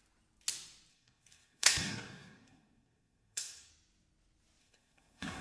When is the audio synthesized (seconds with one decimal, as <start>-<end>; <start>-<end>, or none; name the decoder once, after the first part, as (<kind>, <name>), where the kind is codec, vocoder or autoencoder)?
0.9-3.7 (codec, SNAC); 4.6-5.4